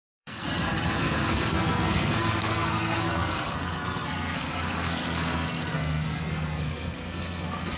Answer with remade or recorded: remade